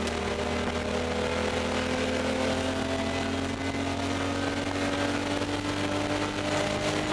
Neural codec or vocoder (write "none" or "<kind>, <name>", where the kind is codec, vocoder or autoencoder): none